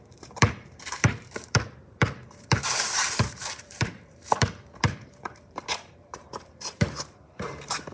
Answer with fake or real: fake